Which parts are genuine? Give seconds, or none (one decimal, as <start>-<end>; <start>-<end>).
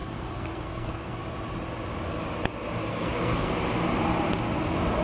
1.2-2.8; 3.5-5.0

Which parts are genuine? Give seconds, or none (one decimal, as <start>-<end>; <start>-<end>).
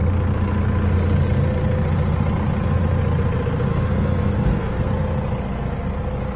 0.0-3.7; 4.9-6.4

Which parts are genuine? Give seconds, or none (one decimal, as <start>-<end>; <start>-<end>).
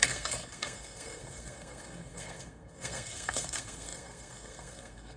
none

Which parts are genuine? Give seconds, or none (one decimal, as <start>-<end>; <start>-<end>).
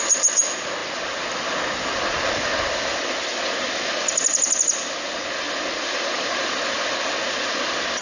0.0-8.0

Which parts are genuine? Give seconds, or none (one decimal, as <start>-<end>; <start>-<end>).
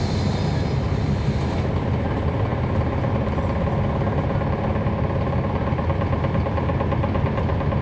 0.0-7.8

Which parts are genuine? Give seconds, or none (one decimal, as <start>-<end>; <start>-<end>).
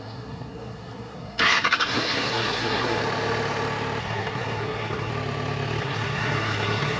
3.0-4.0; 5.1-5.8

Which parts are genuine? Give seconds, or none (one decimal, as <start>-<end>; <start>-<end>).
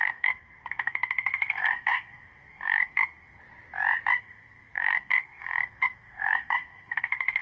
3.4-4.2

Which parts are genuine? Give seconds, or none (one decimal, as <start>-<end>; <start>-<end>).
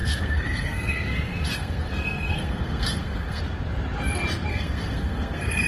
3.4-4.5